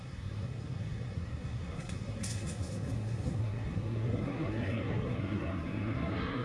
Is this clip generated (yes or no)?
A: yes